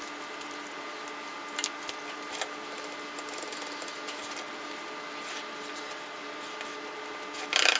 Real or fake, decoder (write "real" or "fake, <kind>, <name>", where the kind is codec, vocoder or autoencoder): real